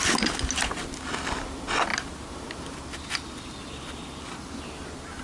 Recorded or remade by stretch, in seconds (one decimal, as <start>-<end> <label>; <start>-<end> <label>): 0.0-5.2 recorded